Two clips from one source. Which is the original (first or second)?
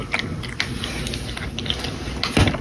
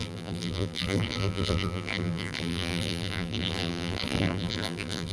first